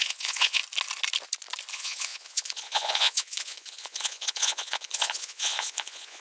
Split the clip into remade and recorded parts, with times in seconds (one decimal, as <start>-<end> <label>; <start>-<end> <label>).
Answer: 0.0-0.6 remade; 0.6-1.7 recorded; 1.7-6.2 remade